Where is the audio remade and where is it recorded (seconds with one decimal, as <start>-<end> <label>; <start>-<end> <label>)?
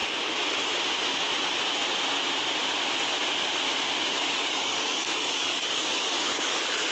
0.0-4.1 recorded; 4.1-6.9 remade